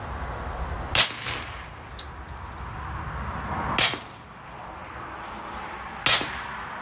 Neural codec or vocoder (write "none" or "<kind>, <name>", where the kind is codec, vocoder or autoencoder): none